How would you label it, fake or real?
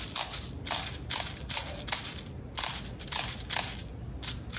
real